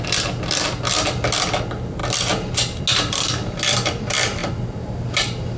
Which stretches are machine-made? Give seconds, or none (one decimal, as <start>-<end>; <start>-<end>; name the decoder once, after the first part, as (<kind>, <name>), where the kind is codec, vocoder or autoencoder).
2.0-2.8 (vocoder, BigVGAN v2); 4.4-5.6